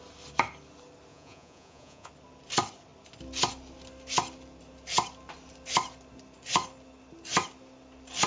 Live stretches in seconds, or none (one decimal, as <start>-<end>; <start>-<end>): 0.0-1.1; 2.1-8.3